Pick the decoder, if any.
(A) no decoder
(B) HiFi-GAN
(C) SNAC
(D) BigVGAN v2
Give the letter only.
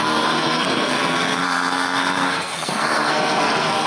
C